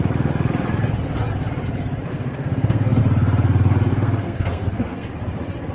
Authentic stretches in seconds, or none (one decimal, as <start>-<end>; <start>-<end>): 0.0-2.1; 3.0-3.9; 5.1-5.7